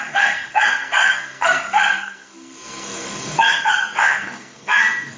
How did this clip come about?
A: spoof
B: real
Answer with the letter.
A